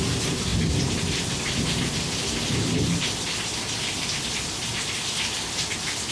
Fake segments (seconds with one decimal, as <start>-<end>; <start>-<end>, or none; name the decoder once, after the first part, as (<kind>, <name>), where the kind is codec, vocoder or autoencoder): none